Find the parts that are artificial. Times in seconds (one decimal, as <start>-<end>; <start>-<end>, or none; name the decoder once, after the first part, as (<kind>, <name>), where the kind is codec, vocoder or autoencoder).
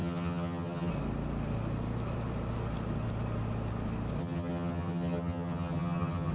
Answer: 0.0-0.9 (vocoder, HiFi-GAN); 4.2-6.3